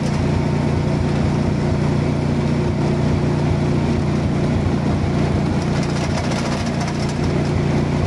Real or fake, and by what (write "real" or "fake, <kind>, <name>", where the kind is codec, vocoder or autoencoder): real